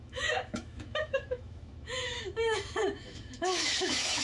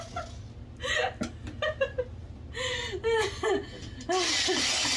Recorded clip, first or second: second